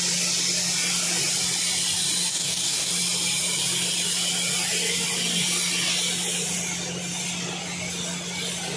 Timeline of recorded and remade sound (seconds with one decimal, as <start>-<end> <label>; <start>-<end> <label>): 0.0-2.3 recorded; 2.3-2.9 remade; 2.9-8.8 recorded